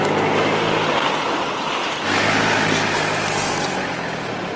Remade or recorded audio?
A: recorded